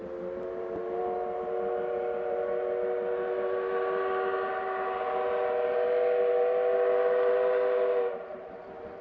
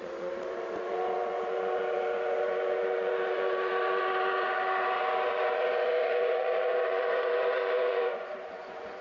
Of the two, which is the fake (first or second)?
second